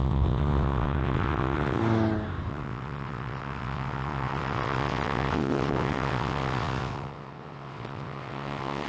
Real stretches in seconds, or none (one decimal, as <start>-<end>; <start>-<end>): 1.8-2.5